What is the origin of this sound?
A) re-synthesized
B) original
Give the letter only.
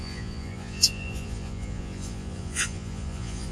A